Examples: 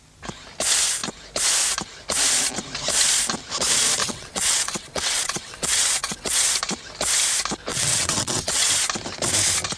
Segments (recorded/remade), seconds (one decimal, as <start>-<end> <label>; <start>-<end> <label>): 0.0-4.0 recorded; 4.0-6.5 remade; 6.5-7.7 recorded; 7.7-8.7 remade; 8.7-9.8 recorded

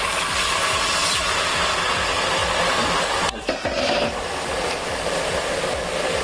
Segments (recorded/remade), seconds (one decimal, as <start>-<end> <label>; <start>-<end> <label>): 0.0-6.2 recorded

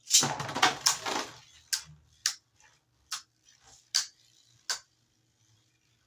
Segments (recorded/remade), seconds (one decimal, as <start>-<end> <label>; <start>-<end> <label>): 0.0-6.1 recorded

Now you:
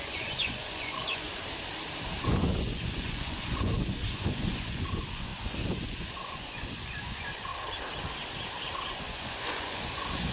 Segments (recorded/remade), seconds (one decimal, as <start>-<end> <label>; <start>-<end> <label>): 0.0-1.3 remade; 1.3-2.2 recorded; 2.2-7.5 remade; 7.5-8.9 recorded; 8.9-10.3 remade

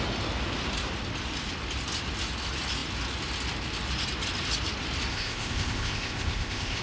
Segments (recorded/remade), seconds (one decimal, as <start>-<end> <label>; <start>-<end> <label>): 0.0-5.1 recorded; 5.1-6.8 remade